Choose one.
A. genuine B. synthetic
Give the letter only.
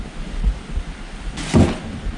A